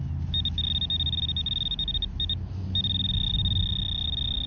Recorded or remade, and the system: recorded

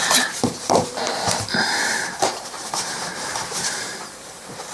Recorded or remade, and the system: remade, vocoder, BigVGAN v2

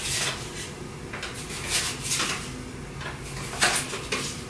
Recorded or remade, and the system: recorded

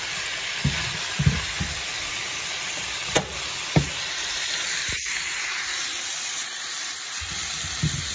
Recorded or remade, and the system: recorded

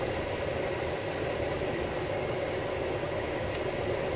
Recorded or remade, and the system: recorded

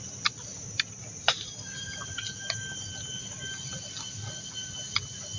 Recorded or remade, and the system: recorded